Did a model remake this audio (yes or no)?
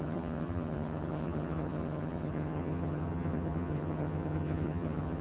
yes